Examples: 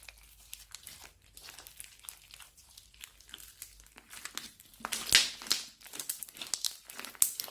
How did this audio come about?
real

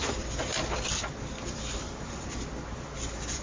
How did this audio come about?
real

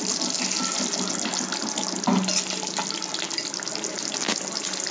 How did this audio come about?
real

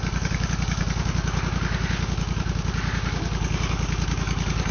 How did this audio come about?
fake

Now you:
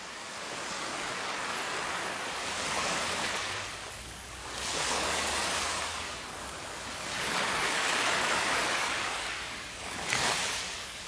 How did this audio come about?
fake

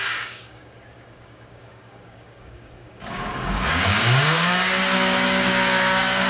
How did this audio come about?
fake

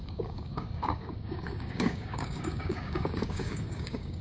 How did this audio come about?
fake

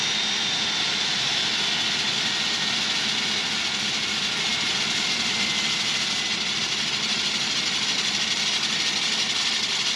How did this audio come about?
real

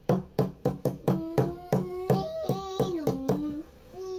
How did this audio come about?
fake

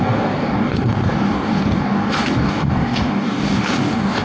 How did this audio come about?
fake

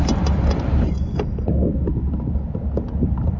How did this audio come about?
real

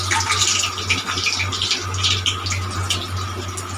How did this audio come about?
real